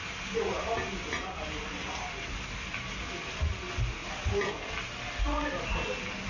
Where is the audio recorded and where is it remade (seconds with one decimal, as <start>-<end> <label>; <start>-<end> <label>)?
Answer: 0.0-6.3 recorded